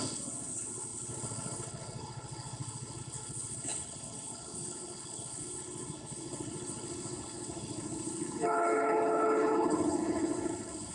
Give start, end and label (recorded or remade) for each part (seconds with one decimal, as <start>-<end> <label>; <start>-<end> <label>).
0.0-10.9 remade